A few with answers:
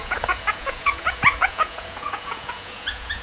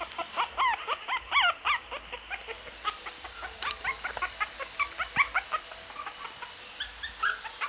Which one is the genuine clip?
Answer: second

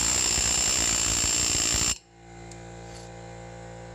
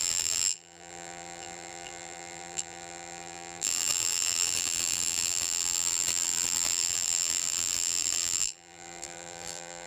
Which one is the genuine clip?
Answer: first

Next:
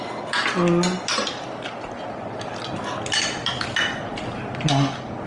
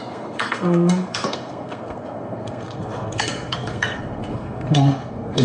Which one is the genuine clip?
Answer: first